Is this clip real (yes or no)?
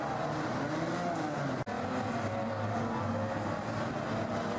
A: yes